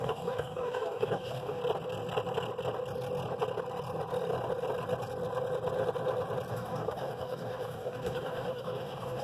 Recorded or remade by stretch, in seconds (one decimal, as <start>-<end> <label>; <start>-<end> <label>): 0.0-1.6 remade; 1.6-6.5 recorded; 6.5-9.2 remade